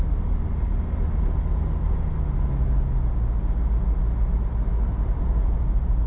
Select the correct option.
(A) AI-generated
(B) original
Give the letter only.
B